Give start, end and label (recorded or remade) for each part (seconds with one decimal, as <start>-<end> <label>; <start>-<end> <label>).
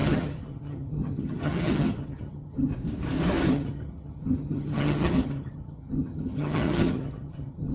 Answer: 0.0-2.7 remade; 2.7-3.5 recorded; 3.5-7.7 remade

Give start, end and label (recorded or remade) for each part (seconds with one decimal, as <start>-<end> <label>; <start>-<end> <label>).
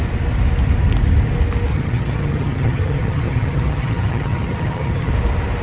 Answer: 0.0-1.7 recorded; 1.7-5.1 remade; 5.1-5.6 recorded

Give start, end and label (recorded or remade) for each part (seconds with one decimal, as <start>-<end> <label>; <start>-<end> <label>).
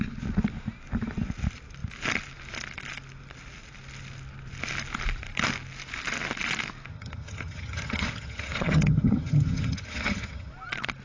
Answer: 0.0-6.9 recorded; 6.9-10.5 remade; 10.5-11.0 recorded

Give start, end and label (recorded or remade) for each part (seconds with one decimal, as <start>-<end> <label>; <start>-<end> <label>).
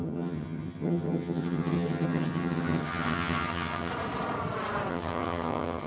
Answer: 0.0-3.9 remade; 3.9-4.9 recorded; 4.9-5.9 remade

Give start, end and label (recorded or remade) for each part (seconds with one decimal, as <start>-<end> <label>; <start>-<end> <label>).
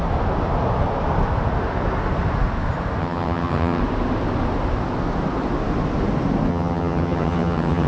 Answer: 0.0-3.0 recorded; 3.0-3.8 remade; 3.8-6.5 recorded; 6.5-7.9 remade